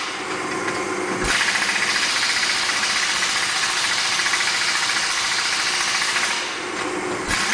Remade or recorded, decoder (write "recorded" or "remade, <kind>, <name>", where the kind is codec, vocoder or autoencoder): recorded